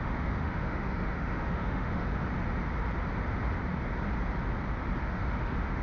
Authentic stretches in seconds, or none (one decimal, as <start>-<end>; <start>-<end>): 2.1-5.0